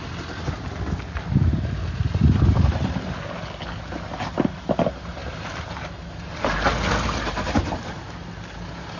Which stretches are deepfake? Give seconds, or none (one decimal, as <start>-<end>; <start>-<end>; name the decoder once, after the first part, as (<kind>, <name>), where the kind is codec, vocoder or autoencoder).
none